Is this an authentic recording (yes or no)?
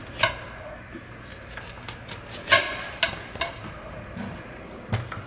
yes